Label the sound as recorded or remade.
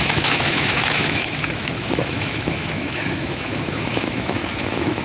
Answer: remade